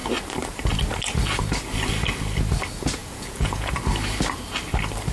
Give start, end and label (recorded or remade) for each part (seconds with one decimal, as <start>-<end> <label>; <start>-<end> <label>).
0.0-3.0 recorded; 3.0-3.7 remade; 3.7-5.1 recorded